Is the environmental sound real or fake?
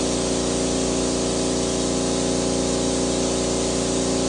real